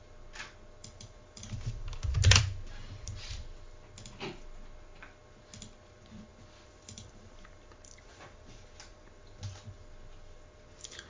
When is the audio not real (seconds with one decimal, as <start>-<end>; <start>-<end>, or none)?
0.8-2.4; 6.3-9.1